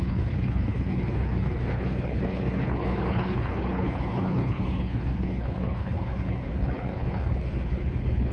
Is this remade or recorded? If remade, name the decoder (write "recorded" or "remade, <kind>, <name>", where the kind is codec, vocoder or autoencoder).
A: remade, codec, HILCodec